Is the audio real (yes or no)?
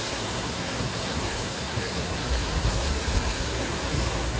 no